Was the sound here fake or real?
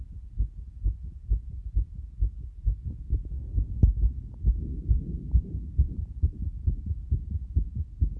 real